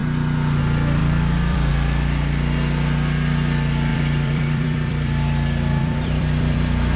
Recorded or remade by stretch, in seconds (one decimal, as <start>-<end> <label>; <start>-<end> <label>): 0.0-1.0 recorded; 1.0-1.7 remade; 1.7-3.9 recorded; 3.9-7.0 remade